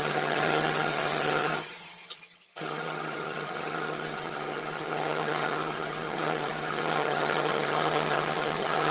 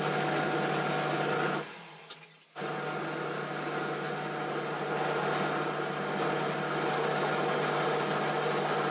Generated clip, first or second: first